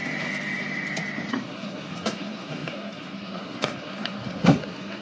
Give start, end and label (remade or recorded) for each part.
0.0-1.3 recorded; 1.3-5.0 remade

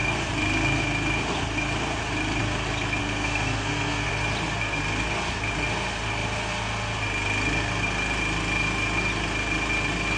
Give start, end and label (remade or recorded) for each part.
0.0-3.0 recorded; 3.0-4.1 remade; 4.1-10.2 recorded

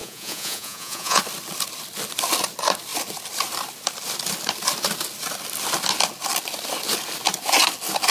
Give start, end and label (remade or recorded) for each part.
0.0-1.2 remade; 1.2-8.1 recorded

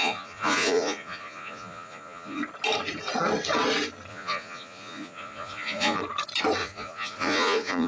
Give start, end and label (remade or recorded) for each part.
0.0-2.4 remade; 2.4-4.1 recorded; 4.1-6.0 remade; 6.0-6.6 recorded; 6.6-7.9 remade